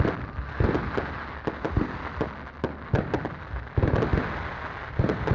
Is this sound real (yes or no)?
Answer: yes